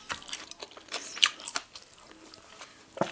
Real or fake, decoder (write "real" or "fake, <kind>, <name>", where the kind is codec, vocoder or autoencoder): fake, vocoder, BigVGAN v2